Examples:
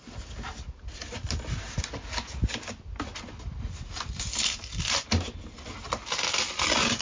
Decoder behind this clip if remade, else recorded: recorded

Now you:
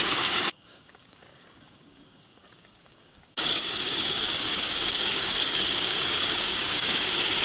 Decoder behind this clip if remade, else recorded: remade, codec, DAC